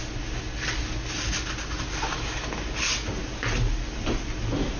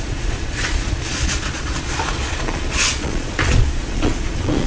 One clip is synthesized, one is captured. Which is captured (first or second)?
first